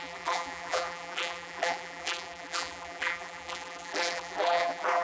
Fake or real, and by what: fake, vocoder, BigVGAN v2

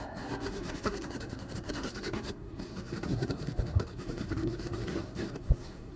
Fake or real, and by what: fake, codec, SNAC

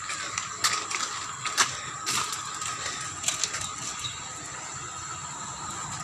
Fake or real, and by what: real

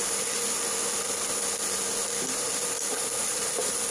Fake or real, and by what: fake, vocoder, BigVGAN v2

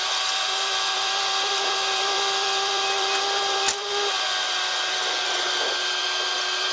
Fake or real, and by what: fake, vocoder, BigVGAN v2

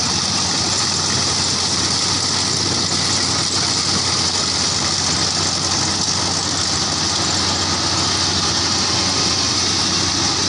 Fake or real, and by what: real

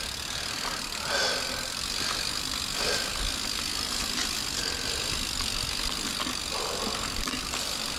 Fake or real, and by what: real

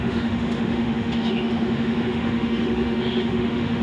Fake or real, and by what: fake, autoencoder, DAC-VAE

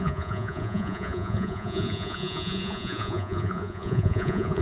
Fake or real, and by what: fake, vocoder, Vocos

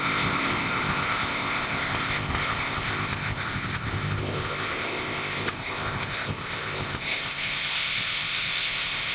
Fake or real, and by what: fake, codec, ZipCodec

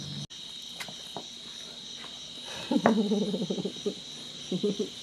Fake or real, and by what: real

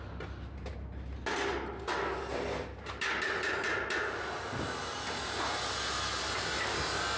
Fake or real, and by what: real